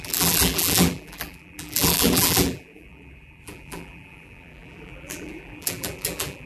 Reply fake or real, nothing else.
fake